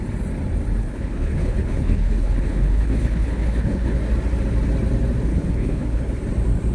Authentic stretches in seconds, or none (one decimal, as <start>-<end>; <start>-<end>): 0.0-0.8; 4.0-5.3; 6.1-6.7